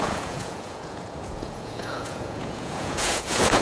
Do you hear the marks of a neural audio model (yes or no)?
yes